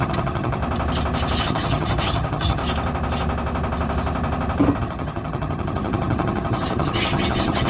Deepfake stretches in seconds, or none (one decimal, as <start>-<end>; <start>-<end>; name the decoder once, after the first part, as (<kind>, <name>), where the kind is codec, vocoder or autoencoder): 0.0-0.6 (vocoder, HiFi-GAN); 1.4-2.6; 4.8-7.7